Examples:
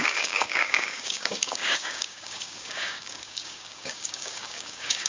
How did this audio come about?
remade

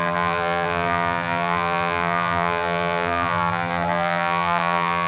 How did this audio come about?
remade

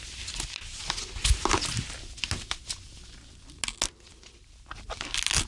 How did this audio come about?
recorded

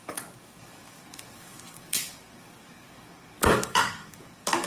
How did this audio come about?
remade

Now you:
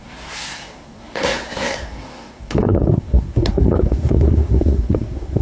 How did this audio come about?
remade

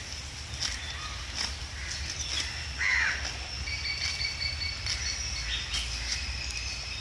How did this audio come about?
recorded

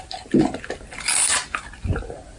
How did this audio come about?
recorded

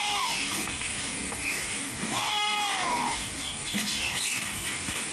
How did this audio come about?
remade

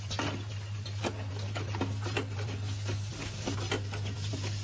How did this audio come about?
recorded